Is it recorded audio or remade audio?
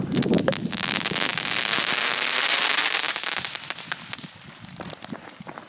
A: recorded